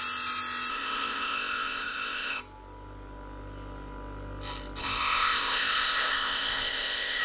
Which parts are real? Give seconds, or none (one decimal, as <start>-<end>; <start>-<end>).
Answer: 0.0-0.7; 2.4-4.8